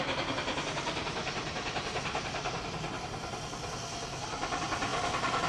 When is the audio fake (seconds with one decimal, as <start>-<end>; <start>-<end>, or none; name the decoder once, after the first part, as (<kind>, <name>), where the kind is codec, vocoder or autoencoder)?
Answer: 1.2-2.7 (vocoder, BigVGAN v2); 4.9-5.5